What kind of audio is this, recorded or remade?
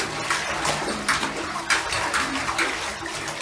recorded